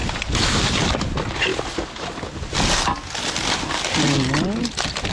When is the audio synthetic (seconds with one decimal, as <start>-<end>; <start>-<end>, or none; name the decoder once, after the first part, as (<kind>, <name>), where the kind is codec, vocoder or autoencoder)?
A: none